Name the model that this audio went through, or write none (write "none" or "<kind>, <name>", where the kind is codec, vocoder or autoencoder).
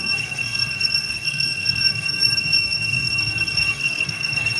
codec, SNAC